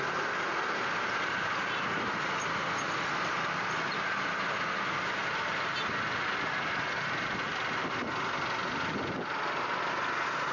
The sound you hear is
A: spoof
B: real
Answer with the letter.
B